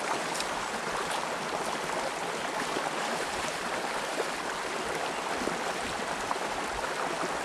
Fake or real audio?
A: real